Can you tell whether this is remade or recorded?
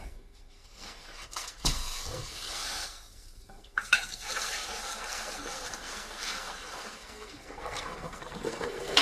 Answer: remade